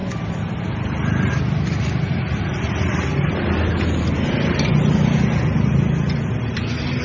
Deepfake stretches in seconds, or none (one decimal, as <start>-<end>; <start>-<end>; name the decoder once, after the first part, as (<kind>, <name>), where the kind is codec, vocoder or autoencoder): none